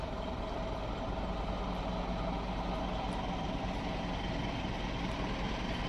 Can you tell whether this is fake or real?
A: real